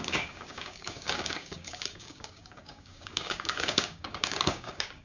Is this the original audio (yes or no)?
no